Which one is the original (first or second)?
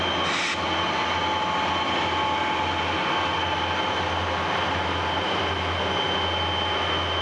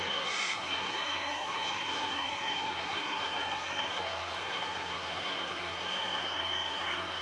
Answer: first